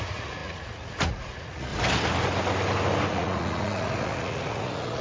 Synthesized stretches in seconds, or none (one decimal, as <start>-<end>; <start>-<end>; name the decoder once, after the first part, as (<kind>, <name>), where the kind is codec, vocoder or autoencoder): 0.0-1.7 (vocoder, Vocos); 3.1-5.0